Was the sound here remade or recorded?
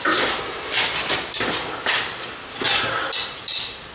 recorded